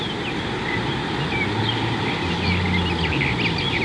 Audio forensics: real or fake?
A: real